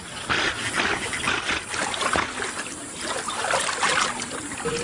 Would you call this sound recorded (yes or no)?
yes